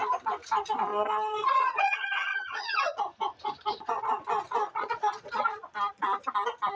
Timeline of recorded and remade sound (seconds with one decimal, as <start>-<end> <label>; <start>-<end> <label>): 0.0-0.9 recorded; 0.9-3.0 remade; 3.0-4.6 recorded; 4.6-6.0 remade; 6.0-6.8 recorded